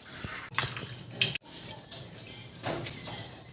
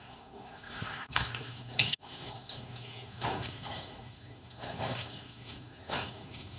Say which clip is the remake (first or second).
second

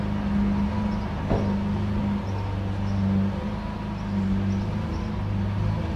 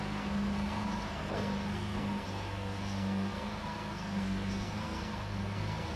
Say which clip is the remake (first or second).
second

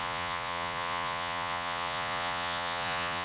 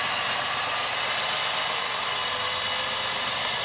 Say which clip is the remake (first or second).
first